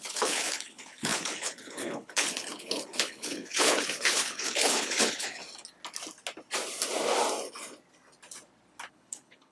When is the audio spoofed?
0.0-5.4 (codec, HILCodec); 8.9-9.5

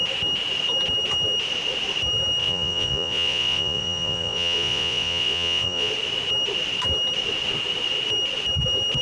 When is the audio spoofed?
2.4-5.9 (vocoder, Vocos)